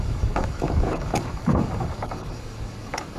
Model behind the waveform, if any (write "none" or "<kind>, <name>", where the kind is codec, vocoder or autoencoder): codec, DAC